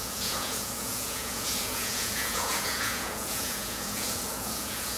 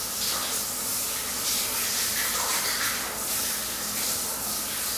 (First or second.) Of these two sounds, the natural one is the second